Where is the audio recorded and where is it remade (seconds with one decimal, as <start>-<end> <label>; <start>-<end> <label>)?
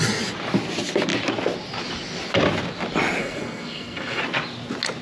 0.0-3.2 recorded; 3.2-4.2 remade; 4.2-5.0 recorded